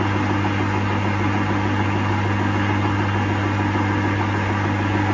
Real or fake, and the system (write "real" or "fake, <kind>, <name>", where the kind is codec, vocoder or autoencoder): real